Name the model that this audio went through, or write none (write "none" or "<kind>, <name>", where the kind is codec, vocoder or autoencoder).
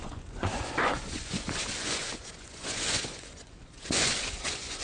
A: vocoder, Vocos